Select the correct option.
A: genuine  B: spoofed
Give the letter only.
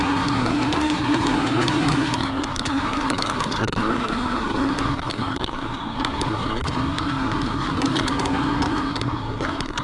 B